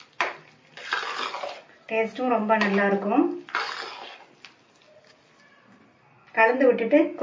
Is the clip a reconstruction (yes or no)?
no